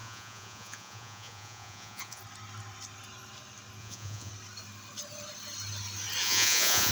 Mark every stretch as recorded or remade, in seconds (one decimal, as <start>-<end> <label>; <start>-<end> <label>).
0.0-2.2 remade; 2.2-3.8 recorded; 3.8-4.3 remade; 4.3-6.2 recorded; 6.2-6.9 remade